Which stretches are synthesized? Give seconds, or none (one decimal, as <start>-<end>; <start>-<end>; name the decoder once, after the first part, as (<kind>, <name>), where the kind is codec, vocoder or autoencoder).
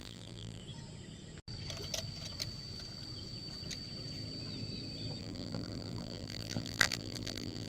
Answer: 0.0-0.6 (vocoder, BigVGAN v2); 5.2-7.7